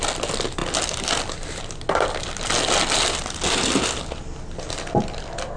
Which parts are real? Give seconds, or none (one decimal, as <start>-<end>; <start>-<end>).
0.0-5.6